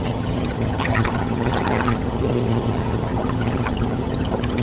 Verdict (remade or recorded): remade